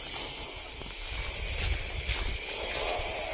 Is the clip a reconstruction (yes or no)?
no